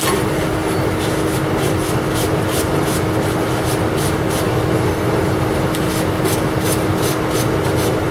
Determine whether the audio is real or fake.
real